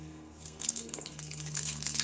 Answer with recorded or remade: remade